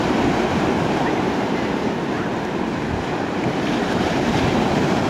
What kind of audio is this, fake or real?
fake